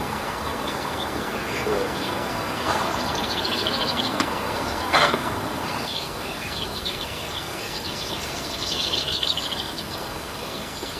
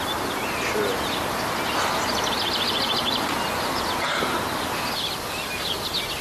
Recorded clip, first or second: second